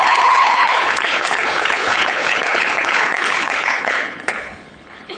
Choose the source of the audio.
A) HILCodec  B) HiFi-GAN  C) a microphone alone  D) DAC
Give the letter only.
A